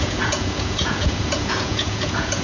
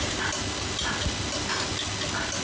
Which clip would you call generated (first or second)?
first